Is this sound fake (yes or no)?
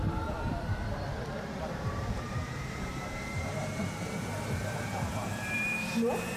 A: yes